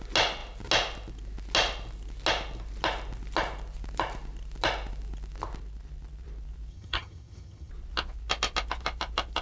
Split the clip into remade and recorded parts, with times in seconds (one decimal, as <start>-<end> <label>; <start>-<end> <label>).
0.0-6.7 recorded; 6.7-7.7 remade; 7.7-9.4 recorded